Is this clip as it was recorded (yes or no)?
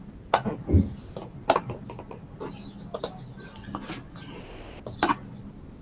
yes